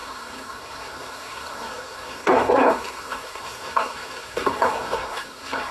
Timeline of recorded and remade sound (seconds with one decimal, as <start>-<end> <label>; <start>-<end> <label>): 0.0-5.7 remade

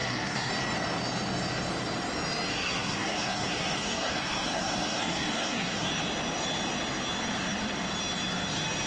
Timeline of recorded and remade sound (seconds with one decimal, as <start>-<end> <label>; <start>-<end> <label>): 0.0-0.5 remade; 0.5-2.5 recorded; 2.5-5.9 remade; 5.9-8.9 recorded